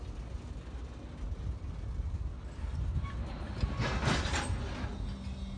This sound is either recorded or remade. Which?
recorded